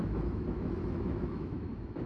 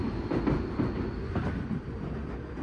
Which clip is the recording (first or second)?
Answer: second